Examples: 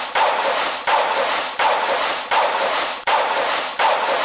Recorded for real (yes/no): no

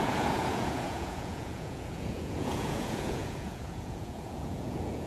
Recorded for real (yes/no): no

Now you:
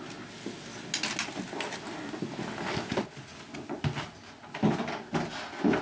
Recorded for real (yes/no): yes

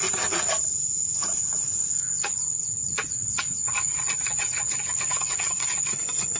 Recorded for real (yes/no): no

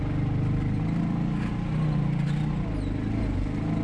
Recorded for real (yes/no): yes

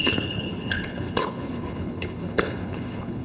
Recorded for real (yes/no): no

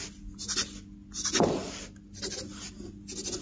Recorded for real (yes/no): yes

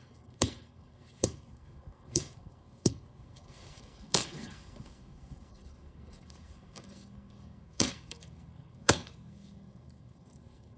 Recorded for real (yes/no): no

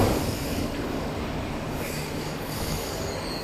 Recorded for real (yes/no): no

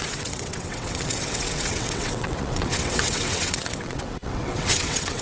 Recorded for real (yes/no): no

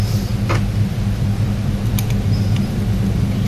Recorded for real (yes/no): yes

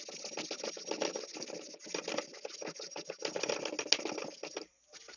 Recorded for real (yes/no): yes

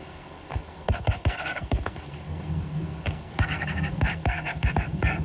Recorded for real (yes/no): no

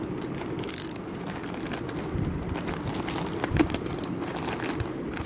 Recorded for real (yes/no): yes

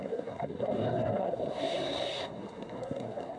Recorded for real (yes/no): no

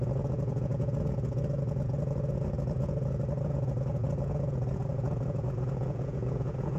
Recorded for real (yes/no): no